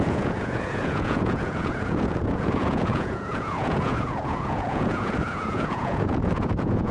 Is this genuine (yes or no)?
no